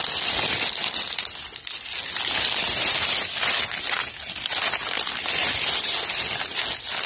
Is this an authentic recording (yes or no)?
yes